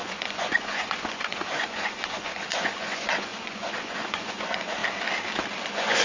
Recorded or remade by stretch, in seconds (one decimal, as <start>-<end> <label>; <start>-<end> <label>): 0.0-4.8 remade; 4.8-5.6 recorded; 5.6-6.0 remade